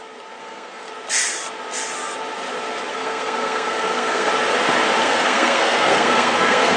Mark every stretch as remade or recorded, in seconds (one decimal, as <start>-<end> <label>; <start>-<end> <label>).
0.0-0.4 recorded; 0.4-0.9 remade; 0.9-2.9 recorded; 2.9-4.3 remade; 4.3-5.0 recorded; 5.0-6.8 remade